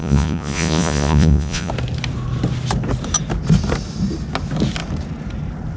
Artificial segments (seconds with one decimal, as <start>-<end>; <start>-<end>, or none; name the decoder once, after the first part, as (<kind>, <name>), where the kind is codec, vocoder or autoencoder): 0.0-1.7 (vocoder, Vocos)